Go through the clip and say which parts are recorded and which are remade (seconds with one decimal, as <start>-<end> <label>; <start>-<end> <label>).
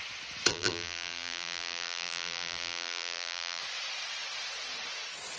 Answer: 0.0-0.5 recorded; 0.5-3.6 remade; 3.6-5.4 recorded